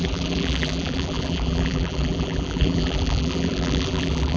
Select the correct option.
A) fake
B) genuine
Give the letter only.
A